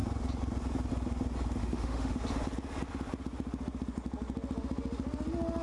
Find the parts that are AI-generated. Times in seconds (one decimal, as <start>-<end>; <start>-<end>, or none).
1.6-2.2